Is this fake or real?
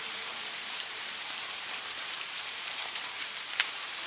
fake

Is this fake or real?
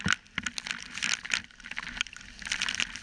real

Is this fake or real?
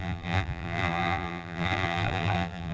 fake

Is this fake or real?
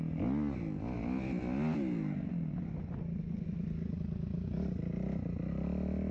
real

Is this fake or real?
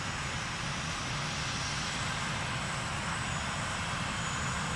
real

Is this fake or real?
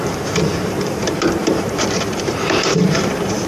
fake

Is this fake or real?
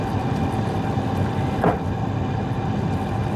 real